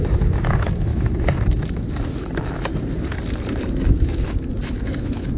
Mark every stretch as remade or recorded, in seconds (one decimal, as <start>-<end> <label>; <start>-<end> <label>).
0.0-2.7 remade; 2.7-3.9 recorded; 3.9-5.4 remade